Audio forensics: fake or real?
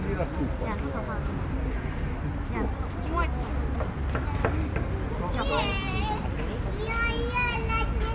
real